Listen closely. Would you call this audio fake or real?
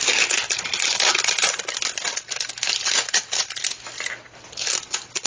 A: real